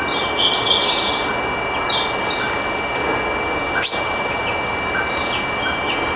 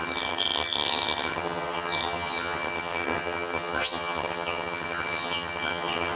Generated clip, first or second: second